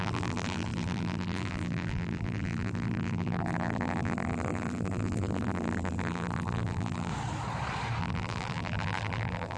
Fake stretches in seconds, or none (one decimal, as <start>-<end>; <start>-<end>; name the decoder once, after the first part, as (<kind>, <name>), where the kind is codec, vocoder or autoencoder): 0.0-7.1 (vocoder, BigVGAN v2); 8.0-9.6